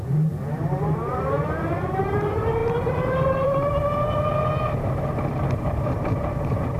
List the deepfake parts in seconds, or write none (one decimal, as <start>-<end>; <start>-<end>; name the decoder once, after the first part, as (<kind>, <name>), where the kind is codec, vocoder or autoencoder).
0.0-6.8 (vocoder, BigVGAN v2)